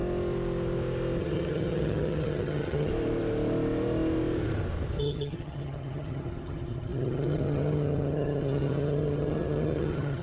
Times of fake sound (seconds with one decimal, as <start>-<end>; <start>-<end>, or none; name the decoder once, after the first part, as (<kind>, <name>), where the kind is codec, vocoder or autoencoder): 1.2-2.9 (vocoder, HiFi-GAN); 5.0-10.2